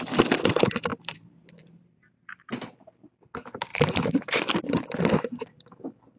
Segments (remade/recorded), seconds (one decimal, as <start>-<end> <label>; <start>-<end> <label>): 0.0-0.9 recorded; 0.9-2.5 remade; 2.5-3.7 recorded; 3.7-4.6 remade; 4.6-6.2 recorded